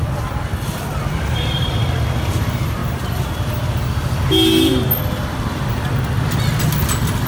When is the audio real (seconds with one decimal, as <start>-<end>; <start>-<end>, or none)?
0.0-2.8; 3.6-7.3